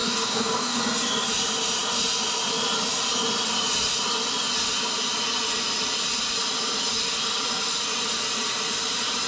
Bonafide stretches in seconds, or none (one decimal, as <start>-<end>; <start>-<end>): 0.8-9.3